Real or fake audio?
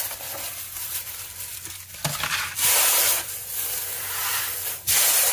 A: real